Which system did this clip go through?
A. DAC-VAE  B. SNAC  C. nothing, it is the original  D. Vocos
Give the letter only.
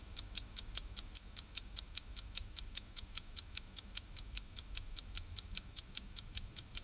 A